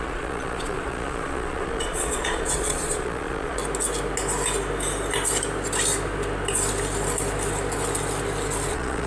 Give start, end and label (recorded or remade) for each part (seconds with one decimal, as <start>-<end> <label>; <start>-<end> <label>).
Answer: 0.0-3.6 remade; 3.6-8.7 recorded; 8.7-9.1 remade